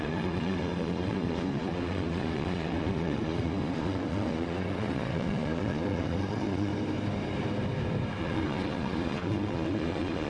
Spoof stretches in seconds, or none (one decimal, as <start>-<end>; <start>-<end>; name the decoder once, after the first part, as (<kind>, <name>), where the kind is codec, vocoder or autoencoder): 0.0-6.7 (vocoder, Vocos); 8.2-10.3